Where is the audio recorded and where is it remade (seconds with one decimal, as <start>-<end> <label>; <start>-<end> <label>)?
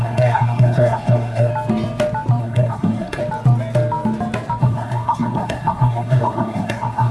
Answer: 0.0-1.5 remade; 1.5-2.4 recorded; 2.4-3.2 remade; 3.2-4.6 recorded; 4.6-7.1 remade